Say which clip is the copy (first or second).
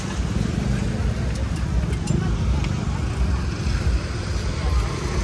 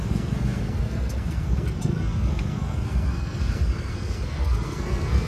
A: second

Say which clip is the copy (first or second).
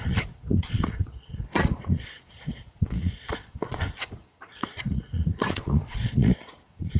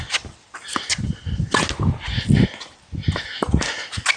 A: first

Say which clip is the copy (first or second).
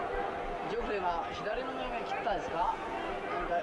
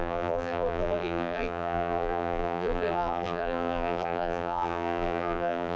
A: second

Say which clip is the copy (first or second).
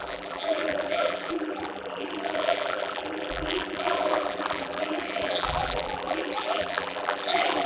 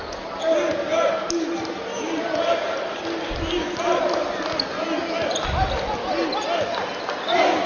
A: first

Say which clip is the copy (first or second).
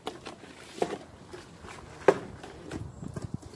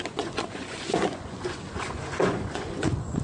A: second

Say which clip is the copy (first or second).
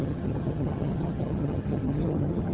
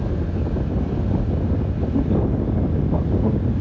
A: first